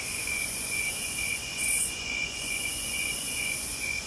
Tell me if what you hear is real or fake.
fake